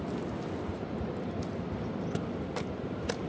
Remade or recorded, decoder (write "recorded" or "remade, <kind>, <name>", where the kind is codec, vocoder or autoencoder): recorded